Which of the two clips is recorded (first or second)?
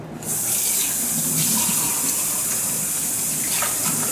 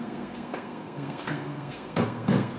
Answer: first